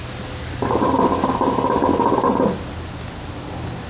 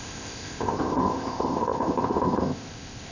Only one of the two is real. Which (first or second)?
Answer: first